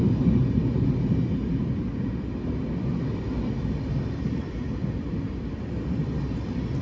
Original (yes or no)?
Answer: yes